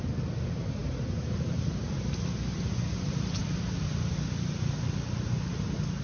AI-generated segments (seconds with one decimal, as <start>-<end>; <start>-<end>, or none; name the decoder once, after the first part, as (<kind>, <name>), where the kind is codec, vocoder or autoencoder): none